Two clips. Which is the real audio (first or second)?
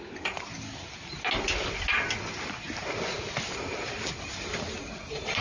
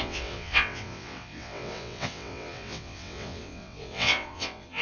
first